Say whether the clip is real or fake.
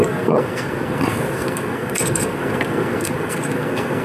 fake